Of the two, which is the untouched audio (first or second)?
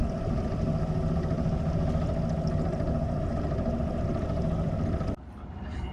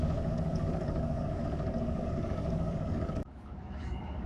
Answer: first